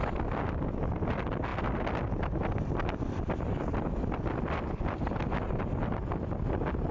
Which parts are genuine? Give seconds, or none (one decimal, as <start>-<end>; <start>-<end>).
0.0-6.9